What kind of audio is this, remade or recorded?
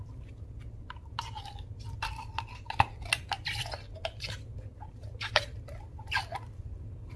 recorded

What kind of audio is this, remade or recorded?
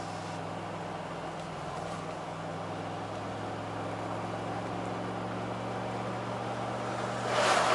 recorded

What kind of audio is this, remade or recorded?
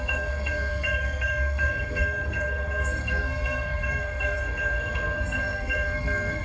remade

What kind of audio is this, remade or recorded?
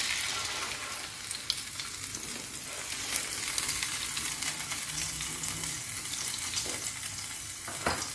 recorded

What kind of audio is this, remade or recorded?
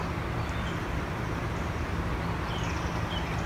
recorded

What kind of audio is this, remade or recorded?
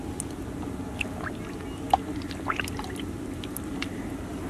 recorded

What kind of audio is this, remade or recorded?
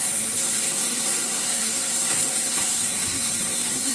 remade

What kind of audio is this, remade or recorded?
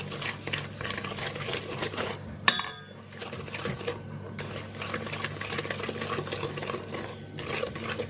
recorded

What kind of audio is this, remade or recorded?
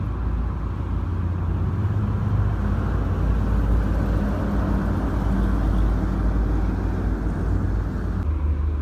recorded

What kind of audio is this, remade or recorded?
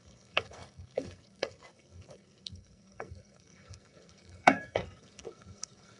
remade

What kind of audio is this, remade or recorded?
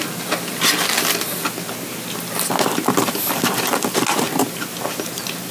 recorded